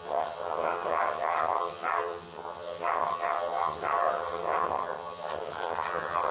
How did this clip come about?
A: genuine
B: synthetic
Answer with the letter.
B